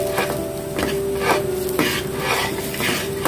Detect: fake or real real